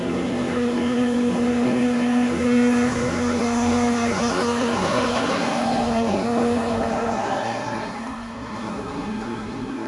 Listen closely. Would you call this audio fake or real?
fake